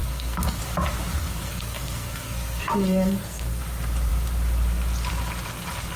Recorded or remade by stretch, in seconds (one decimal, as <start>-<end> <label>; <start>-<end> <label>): 0.0-0.6 remade; 0.6-1.2 recorded; 1.2-3.6 remade; 3.6-6.0 recorded